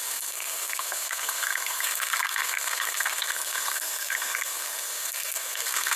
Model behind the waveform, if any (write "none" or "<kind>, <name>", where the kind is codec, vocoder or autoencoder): codec, SNAC